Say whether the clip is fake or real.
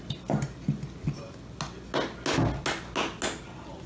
real